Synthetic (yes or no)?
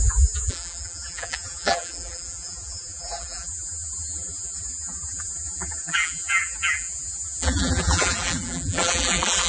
yes